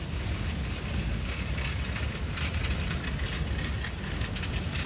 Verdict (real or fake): real